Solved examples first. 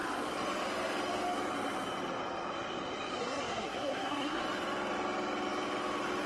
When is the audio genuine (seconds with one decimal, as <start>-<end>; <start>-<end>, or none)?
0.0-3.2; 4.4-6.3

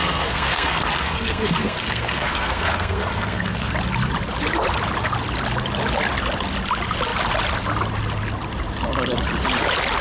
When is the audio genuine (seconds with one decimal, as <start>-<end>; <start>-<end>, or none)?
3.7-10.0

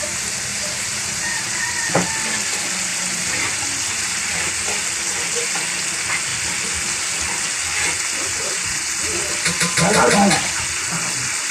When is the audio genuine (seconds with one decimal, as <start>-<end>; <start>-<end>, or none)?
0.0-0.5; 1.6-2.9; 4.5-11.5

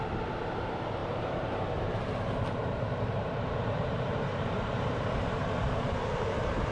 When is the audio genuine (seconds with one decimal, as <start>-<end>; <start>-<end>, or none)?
0.0-1.0; 5.0-6.7

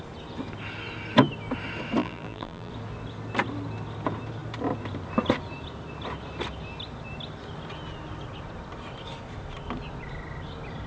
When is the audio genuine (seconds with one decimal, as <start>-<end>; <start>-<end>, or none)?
0.0-2.0; 2.7-10.9